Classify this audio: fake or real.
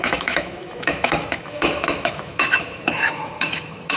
fake